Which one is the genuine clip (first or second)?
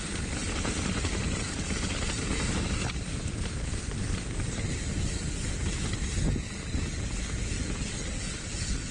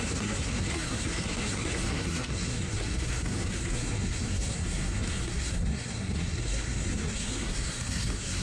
first